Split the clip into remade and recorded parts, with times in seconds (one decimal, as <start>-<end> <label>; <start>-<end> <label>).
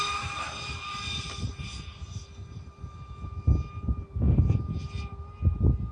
0.0-5.9 recorded